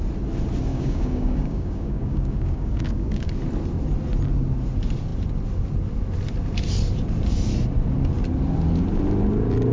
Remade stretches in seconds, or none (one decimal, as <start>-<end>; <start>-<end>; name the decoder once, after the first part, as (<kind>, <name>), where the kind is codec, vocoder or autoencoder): 0.7-3.3 (codec, DAC)